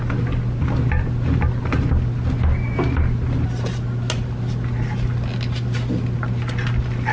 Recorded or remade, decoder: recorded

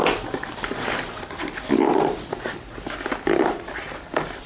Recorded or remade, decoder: recorded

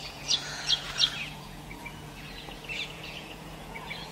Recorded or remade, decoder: remade, vocoder, Vocos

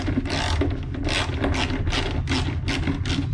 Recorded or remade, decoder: recorded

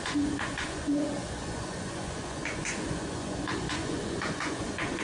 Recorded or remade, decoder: remade, vocoder, Vocos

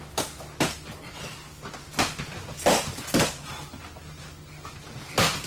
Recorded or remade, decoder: recorded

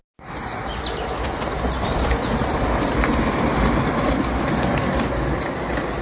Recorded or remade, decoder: recorded